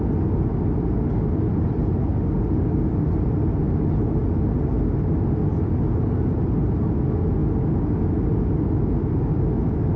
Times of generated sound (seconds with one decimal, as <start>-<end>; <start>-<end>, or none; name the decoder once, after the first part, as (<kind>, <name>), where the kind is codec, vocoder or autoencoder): none

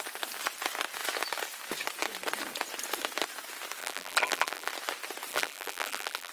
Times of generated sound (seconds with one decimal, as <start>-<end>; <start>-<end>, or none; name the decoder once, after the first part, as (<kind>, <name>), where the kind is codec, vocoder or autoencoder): 3.8-4.7 (vocoder, BigVGAN v2); 5.3-6.3

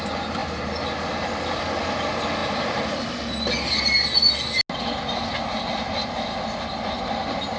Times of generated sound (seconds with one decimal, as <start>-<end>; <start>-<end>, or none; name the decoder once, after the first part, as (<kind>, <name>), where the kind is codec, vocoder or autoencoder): none

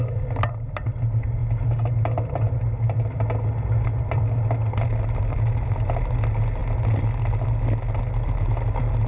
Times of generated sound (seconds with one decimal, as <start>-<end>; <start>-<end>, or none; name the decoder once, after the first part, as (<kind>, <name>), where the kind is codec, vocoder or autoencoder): none